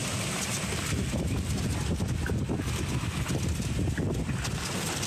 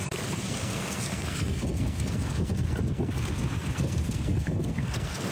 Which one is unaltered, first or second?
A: first